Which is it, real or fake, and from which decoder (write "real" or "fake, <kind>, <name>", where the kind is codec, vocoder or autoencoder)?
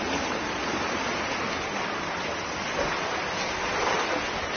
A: real